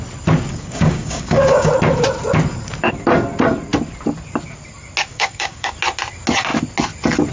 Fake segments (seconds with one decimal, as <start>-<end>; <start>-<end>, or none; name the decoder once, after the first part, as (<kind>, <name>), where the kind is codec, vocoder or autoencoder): 0.5-1.7 (codec, DAC); 5.1-5.7